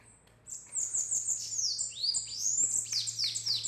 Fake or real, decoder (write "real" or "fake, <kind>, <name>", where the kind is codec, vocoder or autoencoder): real